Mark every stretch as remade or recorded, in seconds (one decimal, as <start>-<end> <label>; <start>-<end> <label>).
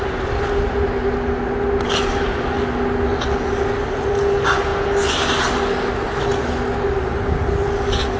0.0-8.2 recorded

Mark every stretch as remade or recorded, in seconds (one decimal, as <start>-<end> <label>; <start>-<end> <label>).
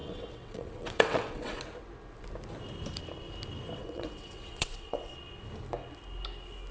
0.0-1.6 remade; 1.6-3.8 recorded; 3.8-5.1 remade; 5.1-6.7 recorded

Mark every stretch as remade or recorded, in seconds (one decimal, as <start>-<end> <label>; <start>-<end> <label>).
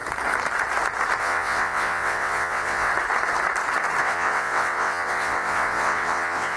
0.0-1.2 recorded; 1.2-2.9 remade; 2.9-4.0 recorded; 4.0-6.6 remade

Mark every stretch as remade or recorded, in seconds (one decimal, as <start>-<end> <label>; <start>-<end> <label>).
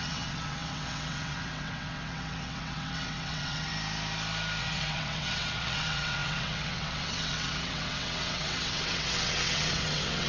0.0-3.7 remade; 3.7-4.6 recorded; 4.6-10.3 remade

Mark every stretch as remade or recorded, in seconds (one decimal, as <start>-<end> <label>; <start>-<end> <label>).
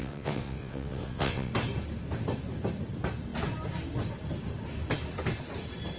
0.0-1.5 remade; 1.5-6.0 recorded